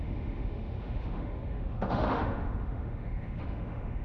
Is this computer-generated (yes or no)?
yes